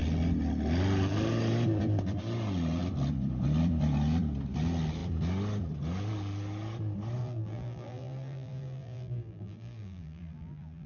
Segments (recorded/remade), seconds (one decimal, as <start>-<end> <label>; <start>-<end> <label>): 0.0-7.2 recorded; 7.2-10.9 remade